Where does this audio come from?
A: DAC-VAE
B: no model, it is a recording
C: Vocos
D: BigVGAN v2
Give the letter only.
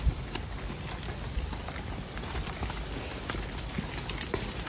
B